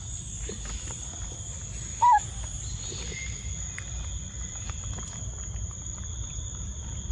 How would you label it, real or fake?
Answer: real